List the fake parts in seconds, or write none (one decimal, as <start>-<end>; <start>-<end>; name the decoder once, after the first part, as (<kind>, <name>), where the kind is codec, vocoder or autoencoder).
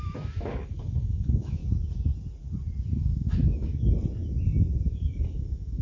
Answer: 0.0-1.6 (autoencoder, DAC-VAE); 2.9-3.7; 4.9-5.8